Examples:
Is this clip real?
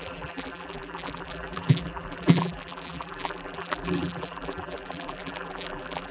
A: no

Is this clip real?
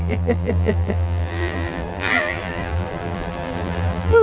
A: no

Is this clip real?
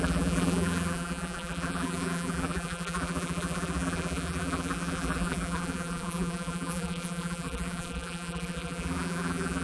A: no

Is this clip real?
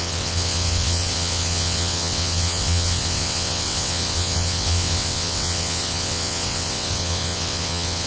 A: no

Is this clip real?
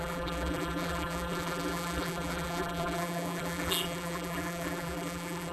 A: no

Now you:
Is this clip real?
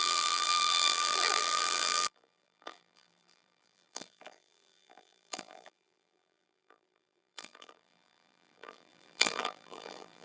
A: no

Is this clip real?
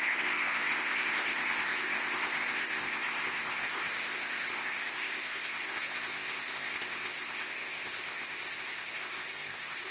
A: no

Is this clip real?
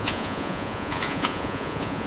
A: no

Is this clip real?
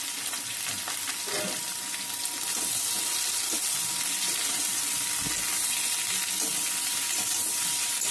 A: yes